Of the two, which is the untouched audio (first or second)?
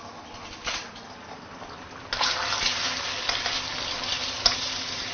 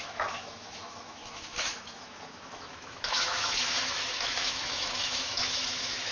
first